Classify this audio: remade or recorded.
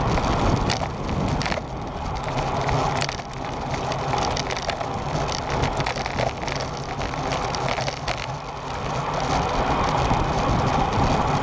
recorded